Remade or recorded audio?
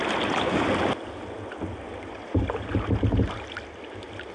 recorded